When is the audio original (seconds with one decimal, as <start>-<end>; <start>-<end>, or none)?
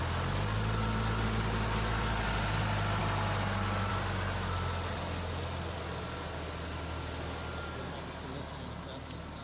0.0-9.4